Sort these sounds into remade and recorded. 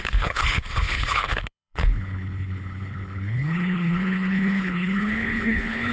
remade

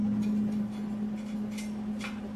recorded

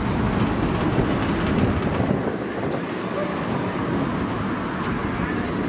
recorded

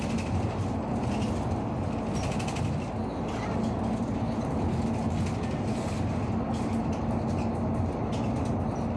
recorded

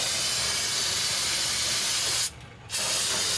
recorded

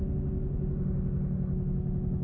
recorded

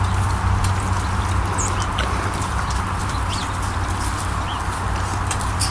recorded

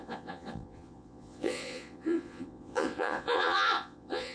remade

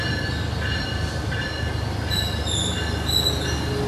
recorded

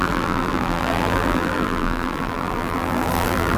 remade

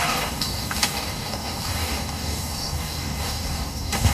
remade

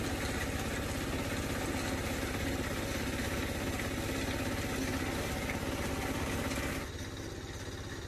recorded